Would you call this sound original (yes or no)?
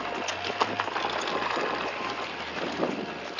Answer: yes